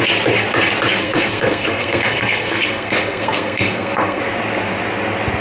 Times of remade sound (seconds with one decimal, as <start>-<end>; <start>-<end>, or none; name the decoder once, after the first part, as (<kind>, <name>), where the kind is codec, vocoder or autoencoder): 1.0-4.2 (codec, SNAC)